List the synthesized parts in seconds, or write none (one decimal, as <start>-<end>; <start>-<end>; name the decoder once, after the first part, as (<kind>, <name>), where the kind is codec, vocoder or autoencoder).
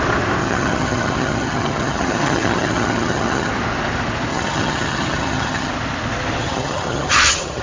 0.4-3.5 (vocoder, HiFi-GAN); 4.3-5.7; 6.4-7.6